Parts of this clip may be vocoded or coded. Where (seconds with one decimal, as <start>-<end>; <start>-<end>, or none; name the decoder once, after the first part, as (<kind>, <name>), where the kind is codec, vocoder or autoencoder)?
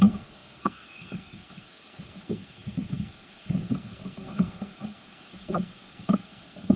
0.0-6.8 (codec, SNAC)